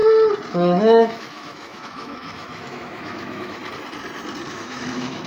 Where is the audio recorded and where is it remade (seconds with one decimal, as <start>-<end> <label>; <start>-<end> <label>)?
0.0-0.5 recorded; 0.5-3.6 remade; 3.6-4.5 recorded; 4.5-5.3 remade